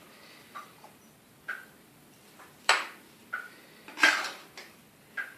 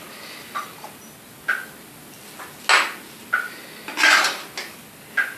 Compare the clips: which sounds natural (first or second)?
second